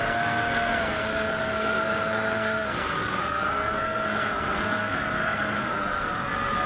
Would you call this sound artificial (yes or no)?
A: yes